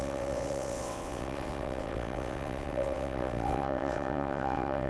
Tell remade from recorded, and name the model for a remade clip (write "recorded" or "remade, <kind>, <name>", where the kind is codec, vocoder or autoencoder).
remade, vocoder, WaveNeXt